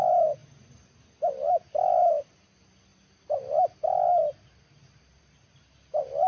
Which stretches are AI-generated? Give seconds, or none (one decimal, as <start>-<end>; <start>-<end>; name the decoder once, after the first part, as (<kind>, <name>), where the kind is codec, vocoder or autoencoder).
none